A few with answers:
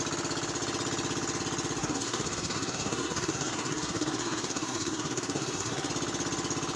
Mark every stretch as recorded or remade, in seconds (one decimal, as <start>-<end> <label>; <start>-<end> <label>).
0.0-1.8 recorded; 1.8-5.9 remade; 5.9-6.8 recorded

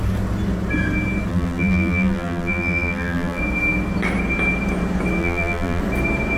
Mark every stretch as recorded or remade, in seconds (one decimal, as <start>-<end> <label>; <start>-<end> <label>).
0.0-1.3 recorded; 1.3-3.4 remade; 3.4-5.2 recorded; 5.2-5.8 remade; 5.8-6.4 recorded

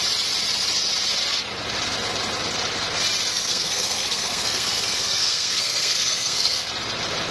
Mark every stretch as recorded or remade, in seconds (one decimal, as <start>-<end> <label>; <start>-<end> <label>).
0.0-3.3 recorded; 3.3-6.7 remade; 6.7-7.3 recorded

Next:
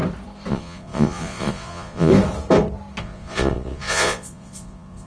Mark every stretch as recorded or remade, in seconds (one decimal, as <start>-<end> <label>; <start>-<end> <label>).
0.0-0.5 recorded; 0.5-2.1 remade; 2.1-3.0 recorded; 3.0-5.1 remade